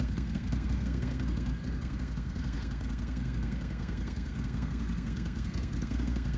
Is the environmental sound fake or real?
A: fake